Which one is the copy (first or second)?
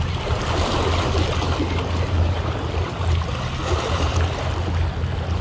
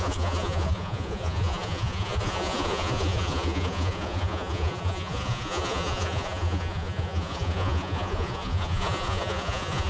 second